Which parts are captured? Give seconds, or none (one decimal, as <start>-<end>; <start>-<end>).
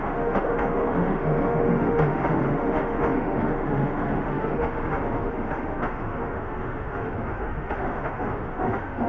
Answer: none